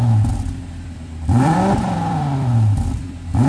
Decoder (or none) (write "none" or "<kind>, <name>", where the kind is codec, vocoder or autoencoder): vocoder, BigVGAN v2